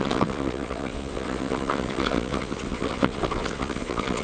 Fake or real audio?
fake